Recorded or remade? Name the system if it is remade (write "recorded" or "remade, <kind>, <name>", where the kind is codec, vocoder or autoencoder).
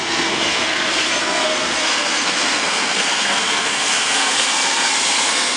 remade, codec, SNAC